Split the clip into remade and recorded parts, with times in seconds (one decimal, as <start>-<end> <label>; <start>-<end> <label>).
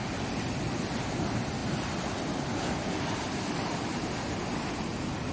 0.0-5.3 recorded